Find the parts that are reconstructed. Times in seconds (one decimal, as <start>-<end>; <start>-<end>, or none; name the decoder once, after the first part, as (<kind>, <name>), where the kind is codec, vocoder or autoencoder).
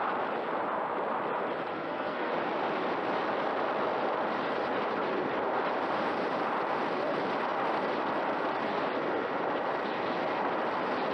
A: 1.7-2.3 (codec, SNAC)